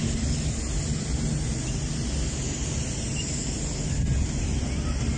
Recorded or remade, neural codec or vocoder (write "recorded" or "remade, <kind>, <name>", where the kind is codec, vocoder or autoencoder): recorded